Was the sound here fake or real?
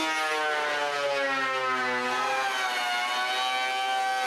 real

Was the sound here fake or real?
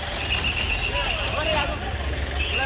real